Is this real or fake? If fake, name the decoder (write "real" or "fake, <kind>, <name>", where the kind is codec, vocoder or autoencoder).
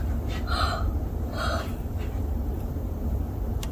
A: fake, vocoder, BigVGAN v2